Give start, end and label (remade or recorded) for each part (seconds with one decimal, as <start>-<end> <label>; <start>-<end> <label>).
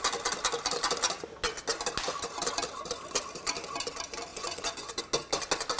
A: 0.0-4.3 recorded; 4.3-5.0 remade; 5.0-5.8 recorded